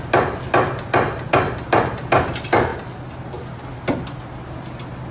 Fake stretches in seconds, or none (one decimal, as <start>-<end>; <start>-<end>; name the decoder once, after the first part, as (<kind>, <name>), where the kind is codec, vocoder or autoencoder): none